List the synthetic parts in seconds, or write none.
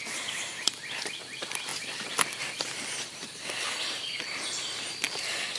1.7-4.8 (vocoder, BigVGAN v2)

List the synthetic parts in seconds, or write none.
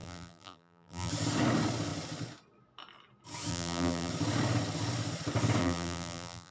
0.0-1.1 (vocoder, BigVGAN v2); 3.5-4.1; 5.6-6.5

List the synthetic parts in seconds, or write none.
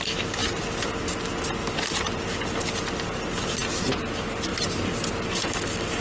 0.0-0.4 (vocoder, BigVGAN v2); 4.0-4.5; 5.4-6.0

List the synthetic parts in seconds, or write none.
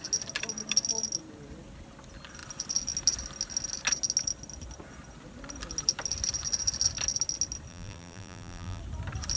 7.7-8.8 (vocoder, BigVGAN v2)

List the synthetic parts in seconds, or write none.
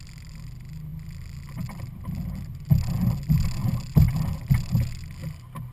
none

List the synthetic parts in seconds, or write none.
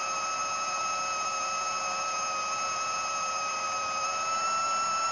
0.0-5.1 (vocoder, BigVGAN v2)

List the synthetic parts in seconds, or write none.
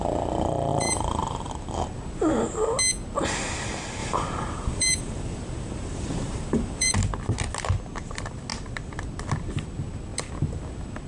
0.7-1.5 (vocoder, BigVGAN v2); 4.0-6.9